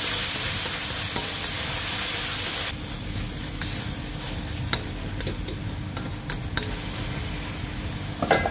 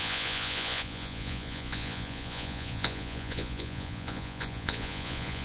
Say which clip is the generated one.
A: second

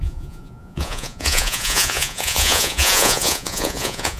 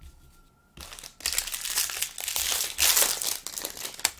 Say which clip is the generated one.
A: first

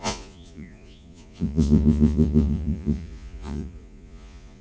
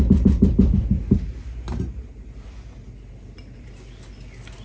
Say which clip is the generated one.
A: first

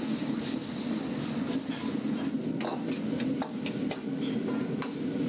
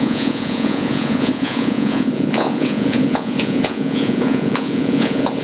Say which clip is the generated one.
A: second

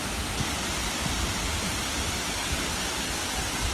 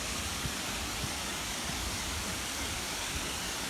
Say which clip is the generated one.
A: second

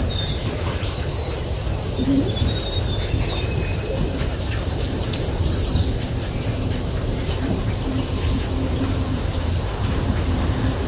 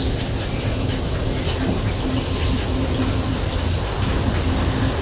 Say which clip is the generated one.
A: first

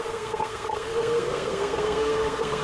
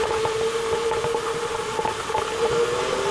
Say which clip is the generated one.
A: first